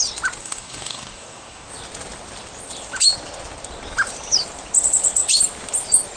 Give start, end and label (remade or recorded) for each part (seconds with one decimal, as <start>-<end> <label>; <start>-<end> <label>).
0.0-0.4 recorded; 0.4-1.7 remade; 1.7-6.2 recorded